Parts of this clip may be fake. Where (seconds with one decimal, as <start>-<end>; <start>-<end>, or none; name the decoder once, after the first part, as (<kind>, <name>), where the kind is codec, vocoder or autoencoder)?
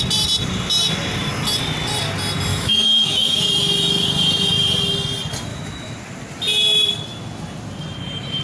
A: 2.5-3.4 (autoencoder, DAC-VAE); 5.5-6.0